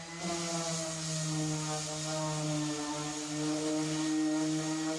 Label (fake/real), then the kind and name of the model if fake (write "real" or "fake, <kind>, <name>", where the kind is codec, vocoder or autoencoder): real